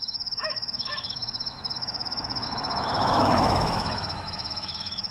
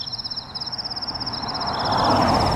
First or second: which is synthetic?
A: first